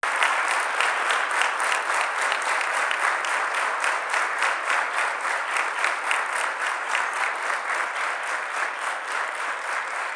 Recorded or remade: recorded